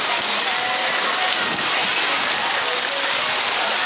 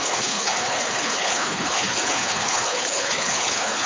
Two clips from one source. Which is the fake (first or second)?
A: second